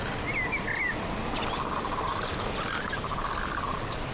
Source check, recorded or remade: recorded